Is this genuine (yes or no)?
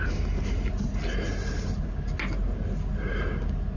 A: yes